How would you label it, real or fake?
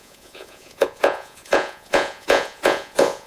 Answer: fake